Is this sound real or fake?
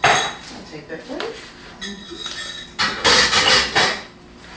real